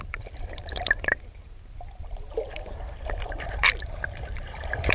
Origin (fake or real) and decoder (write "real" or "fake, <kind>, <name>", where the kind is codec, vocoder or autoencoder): fake, vocoder, BigVGAN v2